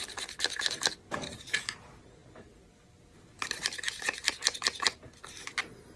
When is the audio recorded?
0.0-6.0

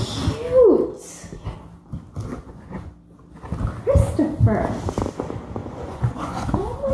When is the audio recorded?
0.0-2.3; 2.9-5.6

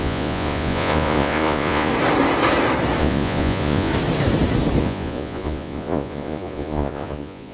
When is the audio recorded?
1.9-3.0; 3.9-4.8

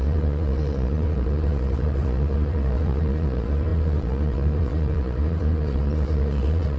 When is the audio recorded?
none

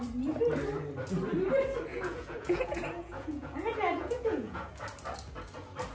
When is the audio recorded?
0.0-1.9; 4.7-5.9

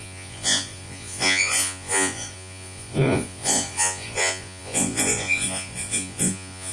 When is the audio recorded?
none